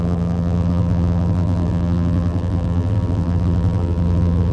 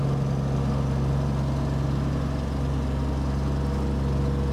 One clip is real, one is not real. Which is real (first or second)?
second